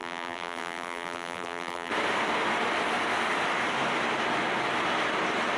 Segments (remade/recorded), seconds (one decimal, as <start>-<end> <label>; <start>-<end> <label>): 0.0-1.9 remade; 1.9-5.6 recorded